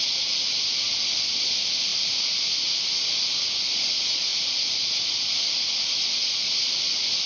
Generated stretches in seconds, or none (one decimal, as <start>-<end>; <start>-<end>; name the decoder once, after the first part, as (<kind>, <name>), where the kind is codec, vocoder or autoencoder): none